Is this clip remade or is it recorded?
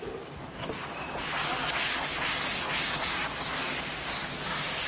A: recorded